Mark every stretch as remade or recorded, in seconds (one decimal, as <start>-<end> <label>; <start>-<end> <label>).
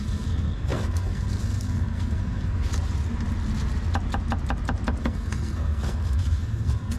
0.0-2.7 remade; 2.7-5.0 recorded; 5.0-7.0 remade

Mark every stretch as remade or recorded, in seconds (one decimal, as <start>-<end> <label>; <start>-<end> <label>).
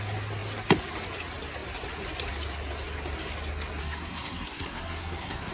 0.0-3.8 recorded; 3.8-5.5 remade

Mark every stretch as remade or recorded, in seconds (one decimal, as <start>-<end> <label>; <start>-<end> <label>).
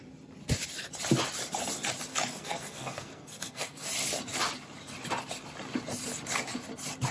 0.0-2.1 recorded; 2.1-3.9 remade; 3.9-7.1 recorded